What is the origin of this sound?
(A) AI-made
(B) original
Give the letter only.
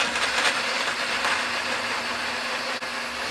B